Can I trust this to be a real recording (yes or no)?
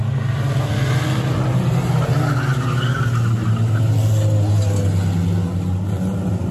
yes